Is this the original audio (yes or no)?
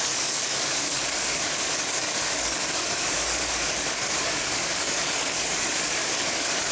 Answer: no